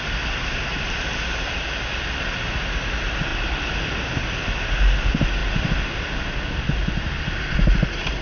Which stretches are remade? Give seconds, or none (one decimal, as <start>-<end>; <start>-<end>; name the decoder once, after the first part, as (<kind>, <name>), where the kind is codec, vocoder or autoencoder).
none